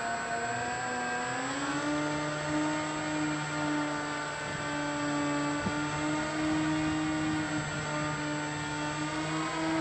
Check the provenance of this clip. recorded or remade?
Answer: recorded